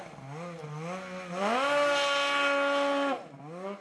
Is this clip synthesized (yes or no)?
no